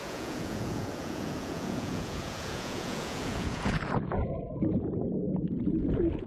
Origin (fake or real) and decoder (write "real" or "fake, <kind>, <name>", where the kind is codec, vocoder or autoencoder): fake, vocoder, Vocos